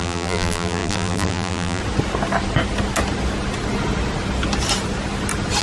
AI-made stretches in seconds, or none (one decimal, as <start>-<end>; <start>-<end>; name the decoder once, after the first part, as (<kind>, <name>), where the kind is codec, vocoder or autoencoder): 0.0-1.8 (vocoder, BigVGAN v2)